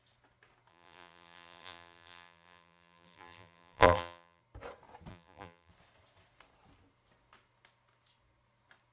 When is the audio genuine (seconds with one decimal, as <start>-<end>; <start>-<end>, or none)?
0.0-0.7; 4.4-5.1; 5.7-8.9